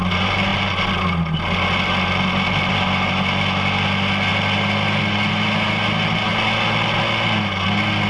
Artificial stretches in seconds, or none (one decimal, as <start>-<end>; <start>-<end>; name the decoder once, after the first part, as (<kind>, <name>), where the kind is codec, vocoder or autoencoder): none